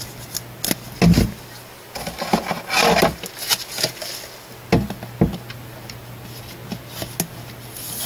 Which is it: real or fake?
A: real